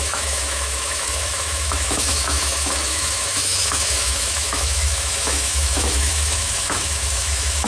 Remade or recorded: remade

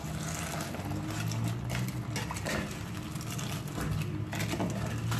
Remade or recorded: recorded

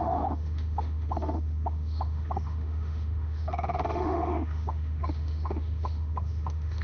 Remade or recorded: remade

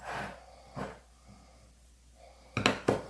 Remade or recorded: recorded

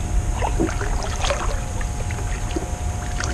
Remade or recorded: recorded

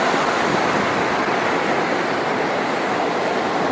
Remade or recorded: recorded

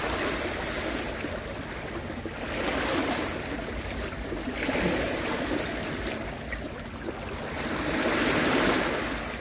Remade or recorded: recorded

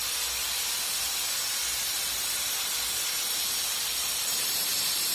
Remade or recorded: recorded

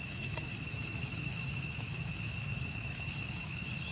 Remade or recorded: remade